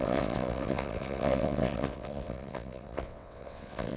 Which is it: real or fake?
fake